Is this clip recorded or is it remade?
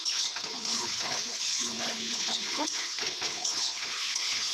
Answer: remade